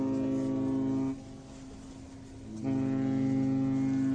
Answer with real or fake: real